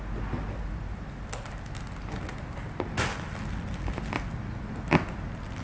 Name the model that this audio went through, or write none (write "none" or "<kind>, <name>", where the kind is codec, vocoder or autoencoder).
none